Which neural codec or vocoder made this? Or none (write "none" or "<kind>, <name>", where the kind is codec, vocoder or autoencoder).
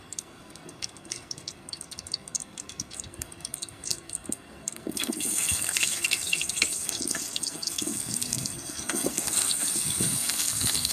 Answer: codec, SNAC